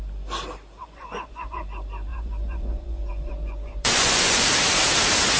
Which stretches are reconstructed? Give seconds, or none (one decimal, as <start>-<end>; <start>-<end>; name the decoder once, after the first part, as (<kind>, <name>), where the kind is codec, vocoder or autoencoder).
0.8-1.6 (vocoder, Vocos); 2.1-4.5